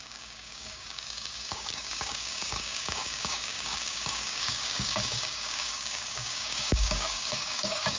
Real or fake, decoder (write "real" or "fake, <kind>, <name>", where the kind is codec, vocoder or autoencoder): fake, codec, DAC